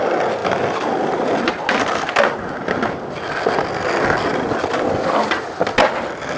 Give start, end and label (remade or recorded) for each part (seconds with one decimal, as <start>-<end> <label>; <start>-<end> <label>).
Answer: 0.0-6.4 recorded